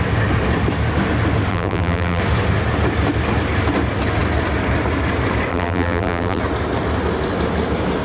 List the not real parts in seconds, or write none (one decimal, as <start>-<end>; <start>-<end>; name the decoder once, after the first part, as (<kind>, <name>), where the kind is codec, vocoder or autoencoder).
1.5-2.2 (vocoder, BigVGAN v2); 5.5-6.4